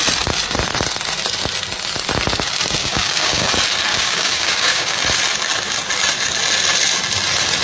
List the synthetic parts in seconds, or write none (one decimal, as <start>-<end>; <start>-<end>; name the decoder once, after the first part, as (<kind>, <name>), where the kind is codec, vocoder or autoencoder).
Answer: 2.8-3.5 (codec, DAC); 3.9-5.0